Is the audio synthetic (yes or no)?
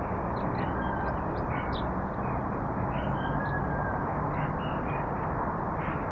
no